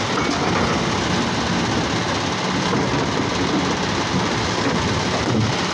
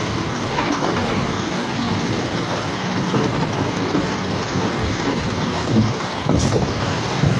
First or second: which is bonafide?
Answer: first